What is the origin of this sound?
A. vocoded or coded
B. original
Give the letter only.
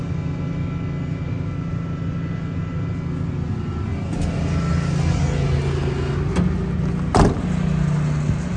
B